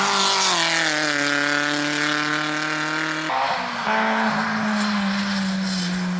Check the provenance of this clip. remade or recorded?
recorded